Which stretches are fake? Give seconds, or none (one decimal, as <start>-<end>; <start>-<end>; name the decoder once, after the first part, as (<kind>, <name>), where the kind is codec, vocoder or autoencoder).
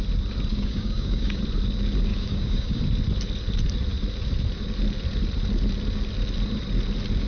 0.5-1.4 (codec, DAC); 2.1-2.8